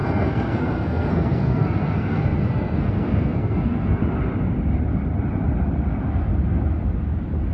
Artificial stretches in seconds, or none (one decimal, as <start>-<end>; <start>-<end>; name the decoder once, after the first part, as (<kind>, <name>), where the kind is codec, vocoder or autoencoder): 0.0-4.0 (codec, SNAC)